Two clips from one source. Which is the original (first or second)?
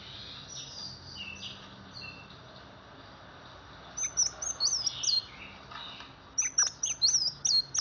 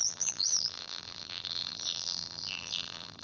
first